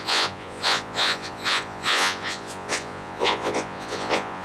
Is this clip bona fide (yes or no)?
no